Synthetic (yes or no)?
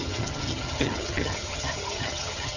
yes